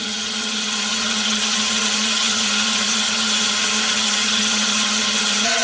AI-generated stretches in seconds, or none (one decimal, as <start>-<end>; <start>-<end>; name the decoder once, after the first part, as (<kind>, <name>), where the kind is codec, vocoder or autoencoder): 0.0-5.6 (vocoder, HiFi-GAN)